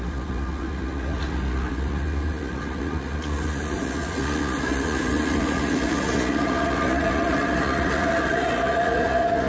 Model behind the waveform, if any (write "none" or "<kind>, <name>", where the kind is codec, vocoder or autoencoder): vocoder, Vocos